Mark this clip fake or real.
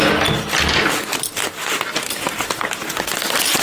real